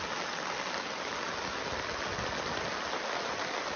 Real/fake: real